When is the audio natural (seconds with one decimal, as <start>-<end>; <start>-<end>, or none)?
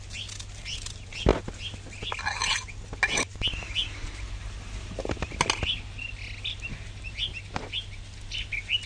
0.0-8.9